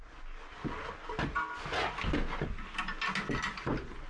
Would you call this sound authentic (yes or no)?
yes